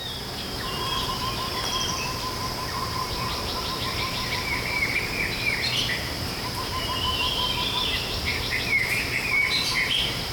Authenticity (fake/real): fake